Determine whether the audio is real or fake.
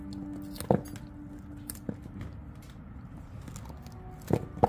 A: real